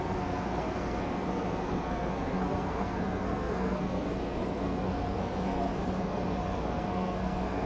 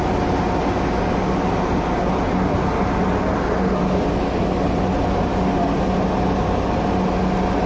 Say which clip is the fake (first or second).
first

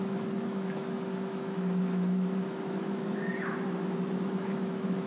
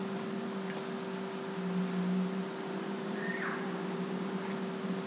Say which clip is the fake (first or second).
first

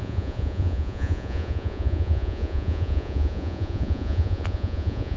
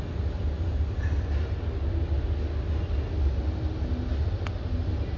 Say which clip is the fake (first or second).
first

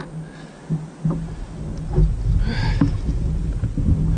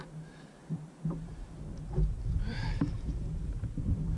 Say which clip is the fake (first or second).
second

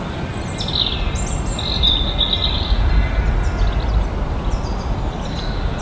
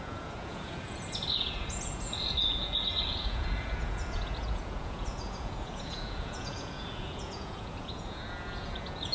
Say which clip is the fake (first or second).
second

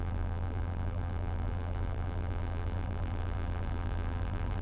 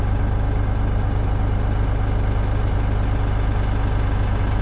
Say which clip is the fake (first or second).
first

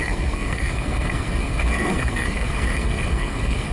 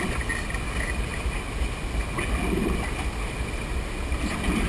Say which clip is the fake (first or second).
first